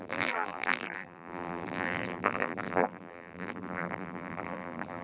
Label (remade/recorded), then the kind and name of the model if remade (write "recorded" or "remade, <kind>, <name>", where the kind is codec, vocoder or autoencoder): remade, vocoder, BigVGAN v2